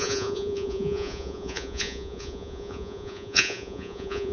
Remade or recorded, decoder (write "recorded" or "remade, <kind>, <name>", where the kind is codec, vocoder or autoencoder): remade, vocoder, Vocos